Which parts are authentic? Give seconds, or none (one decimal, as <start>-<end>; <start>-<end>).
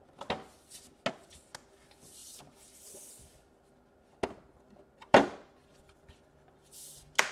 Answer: 0.0-7.3